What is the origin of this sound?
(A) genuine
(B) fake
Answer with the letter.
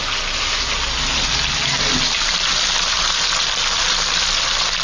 A